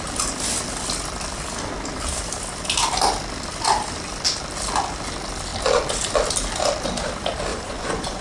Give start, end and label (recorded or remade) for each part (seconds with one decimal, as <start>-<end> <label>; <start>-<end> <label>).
0.0-7.5 recorded; 7.5-8.2 remade